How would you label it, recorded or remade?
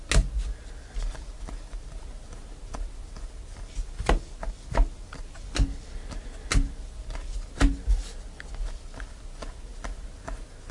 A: recorded